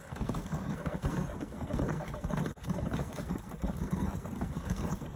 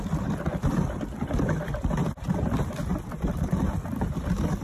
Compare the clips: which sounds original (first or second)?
second